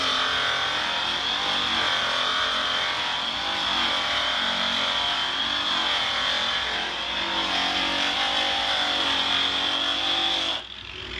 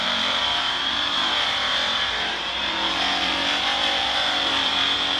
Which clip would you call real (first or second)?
first